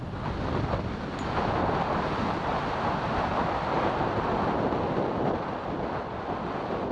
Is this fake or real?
real